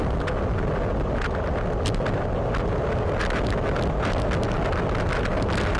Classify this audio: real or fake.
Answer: real